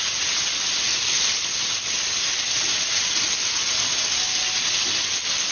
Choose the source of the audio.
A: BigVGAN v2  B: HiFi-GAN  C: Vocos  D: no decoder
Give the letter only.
D